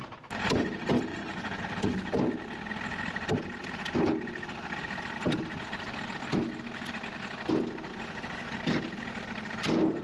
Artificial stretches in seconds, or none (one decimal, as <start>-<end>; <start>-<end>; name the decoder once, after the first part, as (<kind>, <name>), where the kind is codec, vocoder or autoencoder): 1.1-1.6 (vocoder, Vocos); 7.9-8.5